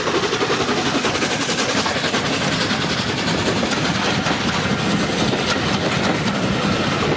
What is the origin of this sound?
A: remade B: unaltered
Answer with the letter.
B